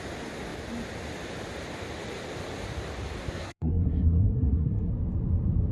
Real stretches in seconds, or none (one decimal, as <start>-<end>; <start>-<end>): 0.0-3.2; 4.9-5.7